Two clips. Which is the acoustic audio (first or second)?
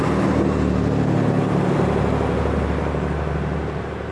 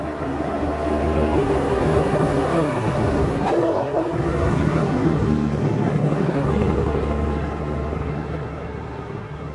first